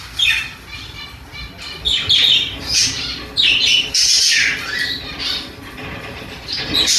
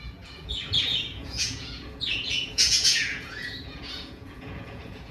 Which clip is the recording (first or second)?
first